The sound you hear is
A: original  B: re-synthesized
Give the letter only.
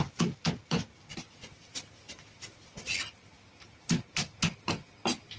A